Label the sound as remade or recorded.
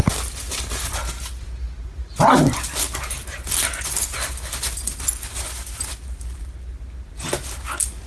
recorded